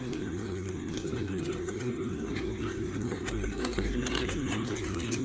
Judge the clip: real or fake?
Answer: fake